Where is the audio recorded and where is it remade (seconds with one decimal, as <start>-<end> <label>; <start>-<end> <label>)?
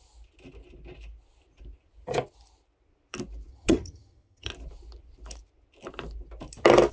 0.0-3.5 recorded; 3.5-4.5 remade; 4.5-6.9 recorded